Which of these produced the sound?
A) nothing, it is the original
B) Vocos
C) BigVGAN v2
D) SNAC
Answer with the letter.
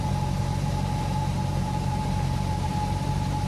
C